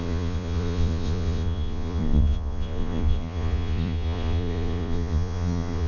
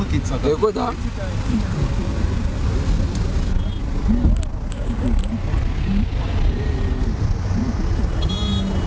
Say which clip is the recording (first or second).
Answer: second